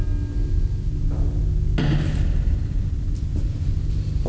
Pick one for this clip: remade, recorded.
recorded